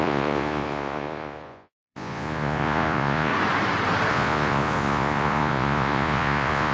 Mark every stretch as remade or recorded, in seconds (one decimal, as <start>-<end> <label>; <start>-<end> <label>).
0.0-3.3 remade; 3.3-4.1 recorded; 4.1-6.7 remade